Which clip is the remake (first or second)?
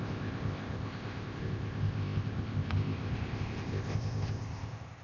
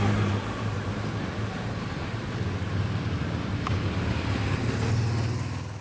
first